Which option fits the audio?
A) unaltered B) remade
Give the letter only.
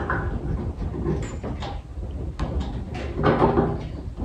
A